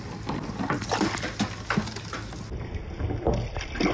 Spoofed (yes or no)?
no